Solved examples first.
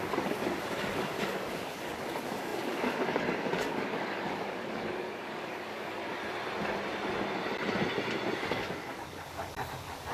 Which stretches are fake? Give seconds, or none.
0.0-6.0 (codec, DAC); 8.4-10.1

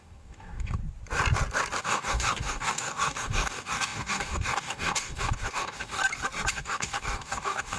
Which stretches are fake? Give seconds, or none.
0.0-0.8 (codec, DAC); 1.8-6.0; 6.5-7.8